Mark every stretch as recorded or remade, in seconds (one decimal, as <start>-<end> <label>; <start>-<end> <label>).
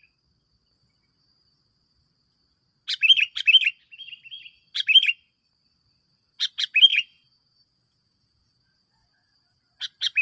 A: 0.0-6.9 recorded; 6.9-9.6 remade; 9.6-10.2 recorded